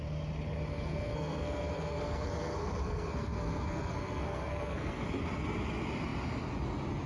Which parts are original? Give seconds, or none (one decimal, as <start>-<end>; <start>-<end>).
0.0-0.7; 5.0-7.1